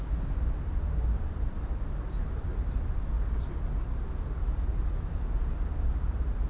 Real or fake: real